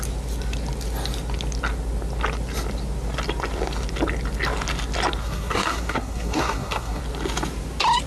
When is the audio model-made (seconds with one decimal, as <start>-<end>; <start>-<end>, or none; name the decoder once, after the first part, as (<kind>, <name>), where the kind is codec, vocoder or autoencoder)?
5.2-7.0 (codec, SNAC)